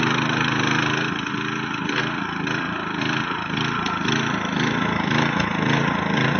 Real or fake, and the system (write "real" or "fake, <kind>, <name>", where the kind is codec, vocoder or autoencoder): fake, vocoder, BigVGAN v2